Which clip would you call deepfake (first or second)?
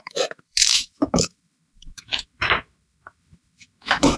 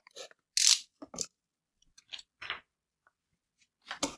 first